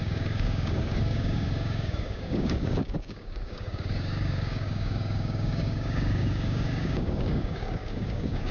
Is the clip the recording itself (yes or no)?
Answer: no